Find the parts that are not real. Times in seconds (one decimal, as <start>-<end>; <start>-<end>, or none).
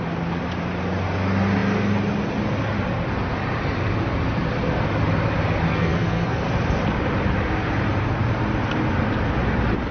5.7-6.4